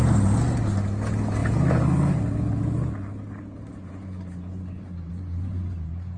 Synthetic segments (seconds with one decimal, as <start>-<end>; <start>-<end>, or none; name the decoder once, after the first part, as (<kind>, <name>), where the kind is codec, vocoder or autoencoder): none